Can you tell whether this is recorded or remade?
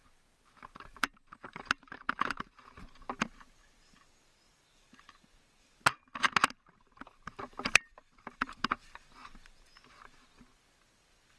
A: remade